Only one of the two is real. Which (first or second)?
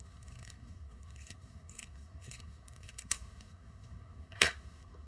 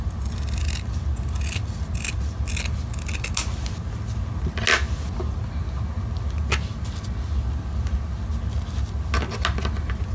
second